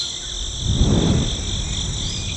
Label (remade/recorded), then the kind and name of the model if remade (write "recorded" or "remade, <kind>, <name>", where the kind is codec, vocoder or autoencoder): recorded